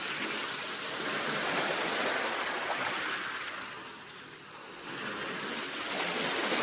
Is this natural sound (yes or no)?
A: yes